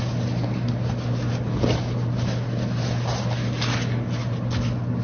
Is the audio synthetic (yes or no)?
no